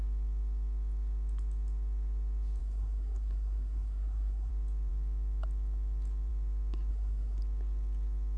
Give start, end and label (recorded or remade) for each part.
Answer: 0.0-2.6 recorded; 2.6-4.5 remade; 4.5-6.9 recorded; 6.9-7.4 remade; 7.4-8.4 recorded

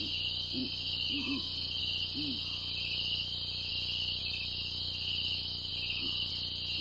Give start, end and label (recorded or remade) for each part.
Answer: 0.0-6.8 recorded

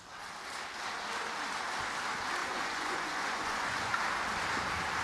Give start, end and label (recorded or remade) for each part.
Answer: 0.0-2.4 recorded; 2.4-3.9 remade; 3.9-5.0 recorded